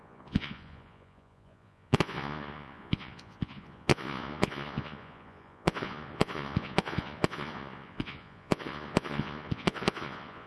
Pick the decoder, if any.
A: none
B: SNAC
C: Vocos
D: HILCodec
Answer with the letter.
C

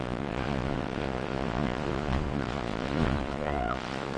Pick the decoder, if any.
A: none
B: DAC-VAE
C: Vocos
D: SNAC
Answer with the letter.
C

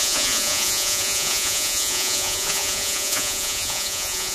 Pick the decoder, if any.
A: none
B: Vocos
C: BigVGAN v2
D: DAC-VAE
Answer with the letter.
B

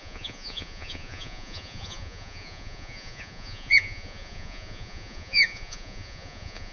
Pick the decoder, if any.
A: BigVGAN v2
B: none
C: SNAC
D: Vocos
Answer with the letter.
D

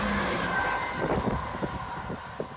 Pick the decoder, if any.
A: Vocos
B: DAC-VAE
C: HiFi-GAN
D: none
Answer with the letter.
D